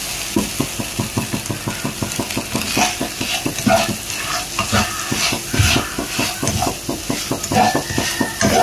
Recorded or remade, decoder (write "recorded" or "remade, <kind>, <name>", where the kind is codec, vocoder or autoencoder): recorded